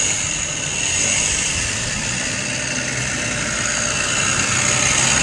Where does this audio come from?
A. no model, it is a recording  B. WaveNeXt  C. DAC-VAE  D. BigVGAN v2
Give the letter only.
A